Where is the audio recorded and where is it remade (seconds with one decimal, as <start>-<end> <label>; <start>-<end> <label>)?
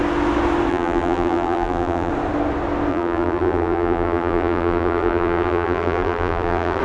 0.0-0.7 recorded; 0.7-2.1 remade; 2.1-2.9 recorded; 2.9-6.8 remade